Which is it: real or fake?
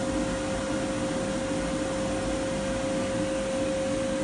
real